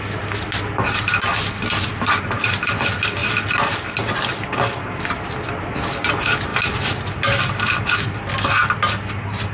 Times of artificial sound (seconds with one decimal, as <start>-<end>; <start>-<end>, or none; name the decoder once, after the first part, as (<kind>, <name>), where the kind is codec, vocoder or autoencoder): none